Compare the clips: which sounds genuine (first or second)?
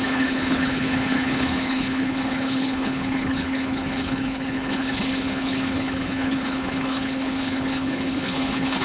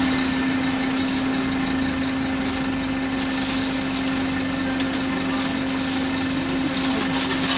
second